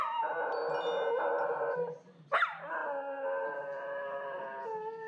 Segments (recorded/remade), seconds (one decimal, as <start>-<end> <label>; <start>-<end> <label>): 0.0-5.1 recorded